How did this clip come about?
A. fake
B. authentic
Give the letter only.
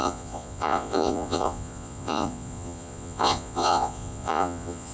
A